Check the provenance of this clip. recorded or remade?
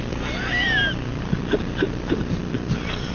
remade